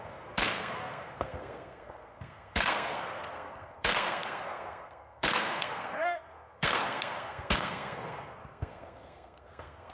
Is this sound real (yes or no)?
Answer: no